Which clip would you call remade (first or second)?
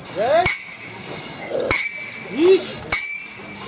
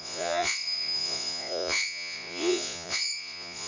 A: second